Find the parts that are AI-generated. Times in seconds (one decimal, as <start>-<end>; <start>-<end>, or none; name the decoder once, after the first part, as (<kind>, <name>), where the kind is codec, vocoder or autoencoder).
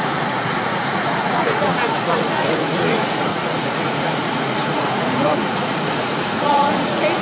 0.0-7.2 (vocoder, Vocos)